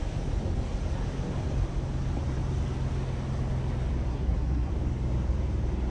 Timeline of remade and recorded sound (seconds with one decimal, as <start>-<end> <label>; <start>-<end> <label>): 0.0-4.1 recorded; 4.1-4.7 remade; 4.7-5.9 recorded